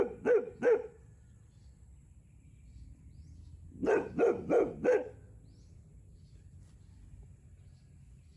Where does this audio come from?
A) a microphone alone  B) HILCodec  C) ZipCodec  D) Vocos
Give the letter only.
A